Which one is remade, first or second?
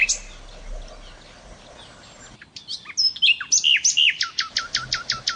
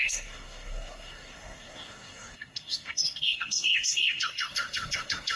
second